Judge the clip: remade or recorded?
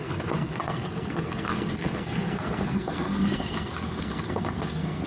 remade